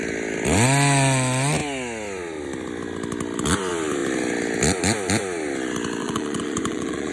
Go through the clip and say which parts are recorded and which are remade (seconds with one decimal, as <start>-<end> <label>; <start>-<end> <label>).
0.0-6.0 recorded; 6.0-7.1 remade